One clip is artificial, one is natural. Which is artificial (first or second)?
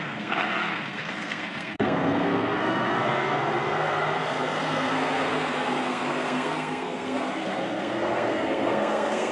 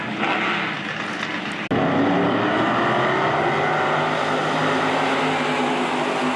first